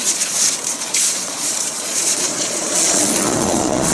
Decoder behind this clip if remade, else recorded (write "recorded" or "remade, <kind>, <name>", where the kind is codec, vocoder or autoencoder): remade, vocoder, Vocos